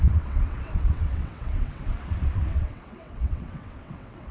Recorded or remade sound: remade